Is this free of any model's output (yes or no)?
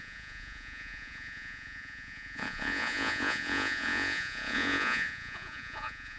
no